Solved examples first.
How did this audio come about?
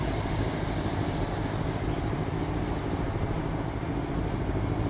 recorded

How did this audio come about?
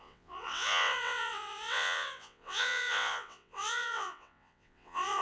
remade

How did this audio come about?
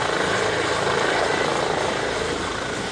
recorded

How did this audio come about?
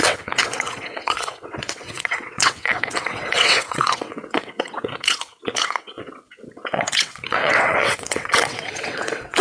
remade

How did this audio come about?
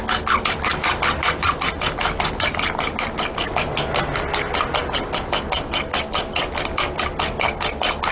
recorded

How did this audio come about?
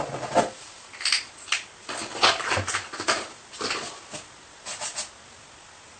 recorded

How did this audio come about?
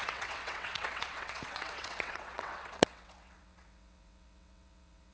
remade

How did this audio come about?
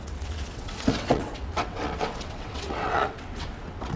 remade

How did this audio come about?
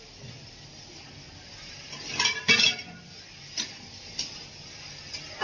recorded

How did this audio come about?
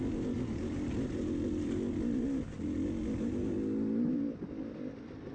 recorded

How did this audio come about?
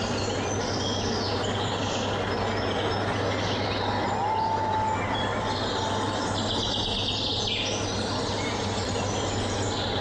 recorded